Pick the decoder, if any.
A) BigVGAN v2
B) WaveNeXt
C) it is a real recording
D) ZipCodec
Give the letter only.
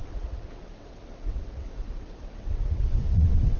B